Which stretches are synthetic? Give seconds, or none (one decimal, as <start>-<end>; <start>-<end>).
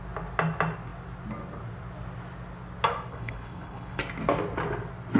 3.1-4.0